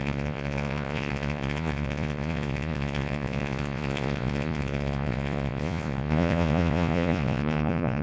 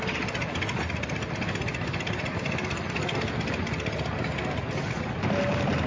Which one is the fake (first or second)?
first